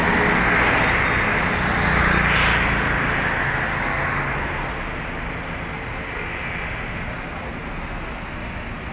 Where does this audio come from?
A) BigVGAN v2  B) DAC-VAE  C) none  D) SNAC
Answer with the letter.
C